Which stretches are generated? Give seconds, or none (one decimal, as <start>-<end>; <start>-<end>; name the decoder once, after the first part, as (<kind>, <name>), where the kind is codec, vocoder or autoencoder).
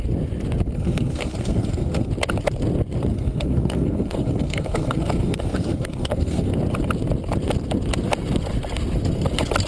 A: 0.7-2.1 (codec, SNAC); 3.1-6.5